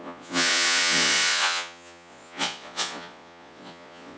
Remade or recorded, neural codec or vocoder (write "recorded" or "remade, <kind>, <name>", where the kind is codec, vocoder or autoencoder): remade, vocoder, Vocos